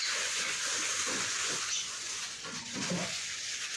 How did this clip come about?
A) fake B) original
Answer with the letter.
A